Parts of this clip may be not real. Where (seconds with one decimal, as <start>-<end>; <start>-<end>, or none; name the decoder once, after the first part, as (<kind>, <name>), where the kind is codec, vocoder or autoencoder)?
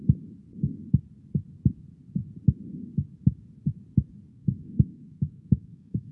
4.3-6.1 (codec, SNAC)